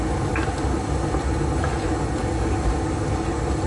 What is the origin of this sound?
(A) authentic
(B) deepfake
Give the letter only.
A